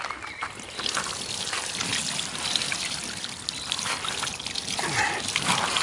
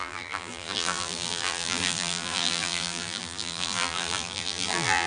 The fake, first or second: second